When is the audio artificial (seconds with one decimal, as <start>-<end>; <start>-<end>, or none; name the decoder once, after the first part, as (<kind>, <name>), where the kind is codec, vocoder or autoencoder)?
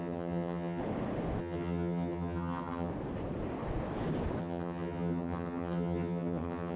0.0-0.8 (vocoder, HiFi-GAN); 1.4-2.9; 4.4-6.8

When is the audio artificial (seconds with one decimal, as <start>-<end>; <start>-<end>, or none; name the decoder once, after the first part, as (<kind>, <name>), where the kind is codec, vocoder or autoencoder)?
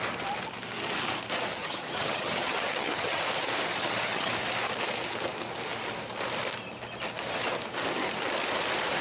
1.6-3.2 (vocoder, HiFi-GAN); 3.8-4.3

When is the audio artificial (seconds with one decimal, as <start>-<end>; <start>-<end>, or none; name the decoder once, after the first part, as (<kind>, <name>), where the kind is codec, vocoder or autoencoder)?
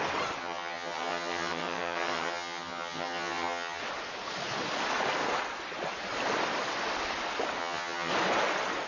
0.4-3.8 (vocoder, HiFi-GAN); 7.6-8.1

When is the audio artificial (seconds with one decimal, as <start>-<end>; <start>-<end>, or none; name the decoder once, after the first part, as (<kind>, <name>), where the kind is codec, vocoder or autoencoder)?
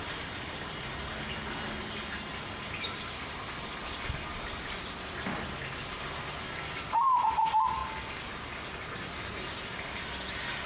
none